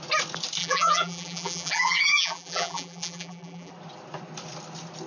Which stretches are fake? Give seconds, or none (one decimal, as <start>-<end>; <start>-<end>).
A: 0.6-3.7